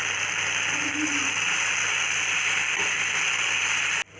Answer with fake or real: real